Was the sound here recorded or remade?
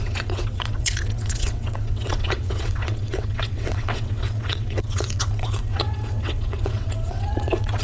remade